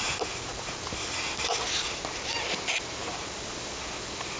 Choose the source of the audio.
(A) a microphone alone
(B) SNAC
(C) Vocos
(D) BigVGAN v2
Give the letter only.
A